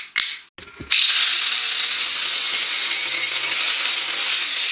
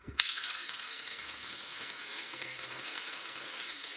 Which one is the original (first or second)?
first